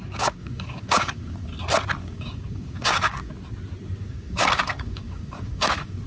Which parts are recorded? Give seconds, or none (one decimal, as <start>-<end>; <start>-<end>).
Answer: 1.5-2.0; 3.3-4.0